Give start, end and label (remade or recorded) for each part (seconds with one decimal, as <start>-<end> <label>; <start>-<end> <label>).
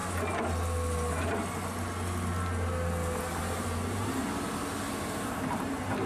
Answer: 0.0-3.4 recorded; 3.4-4.2 remade; 4.2-5.0 recorded; 5.0-6.1 remade